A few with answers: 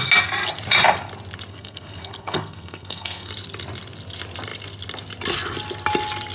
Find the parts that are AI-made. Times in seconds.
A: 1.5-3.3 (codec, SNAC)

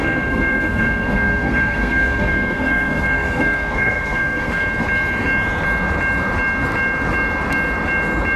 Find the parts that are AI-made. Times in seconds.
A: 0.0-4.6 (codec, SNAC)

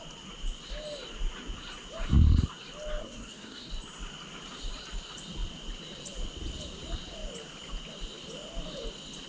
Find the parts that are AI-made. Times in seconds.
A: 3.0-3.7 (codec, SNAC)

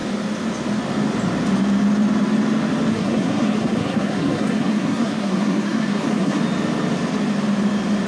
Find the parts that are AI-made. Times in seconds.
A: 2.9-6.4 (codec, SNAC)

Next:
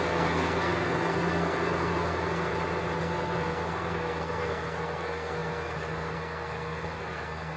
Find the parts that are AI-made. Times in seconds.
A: 0.0-2.5 (codec, SNAC); 3.0-7.6

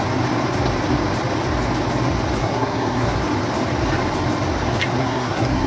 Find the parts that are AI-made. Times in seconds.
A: 2.4-3.2 (codec, SNAC); 5.0-5.7

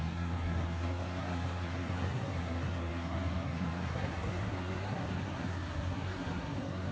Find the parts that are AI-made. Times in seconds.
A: 0.0-6.9 (codec, SNAC)